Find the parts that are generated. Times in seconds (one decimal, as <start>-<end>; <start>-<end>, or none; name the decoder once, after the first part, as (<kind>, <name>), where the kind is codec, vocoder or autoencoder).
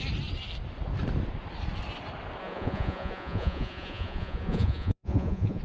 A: 2.4-5.6 (vocoder, Vocos)